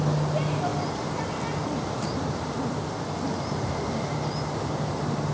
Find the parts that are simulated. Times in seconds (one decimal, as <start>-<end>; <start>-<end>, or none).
none